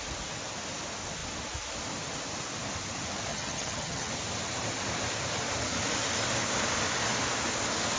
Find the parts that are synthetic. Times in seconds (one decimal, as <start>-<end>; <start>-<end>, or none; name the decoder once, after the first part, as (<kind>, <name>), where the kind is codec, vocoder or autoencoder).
3.3-4.1 (vocoder, HiFi-GAN)